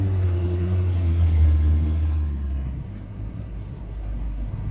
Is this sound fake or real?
fake